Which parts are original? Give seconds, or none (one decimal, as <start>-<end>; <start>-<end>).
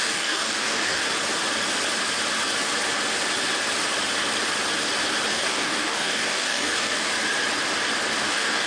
1.0-5.3; 7.1-8.2